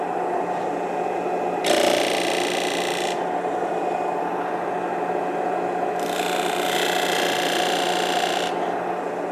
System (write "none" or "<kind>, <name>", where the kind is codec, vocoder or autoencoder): none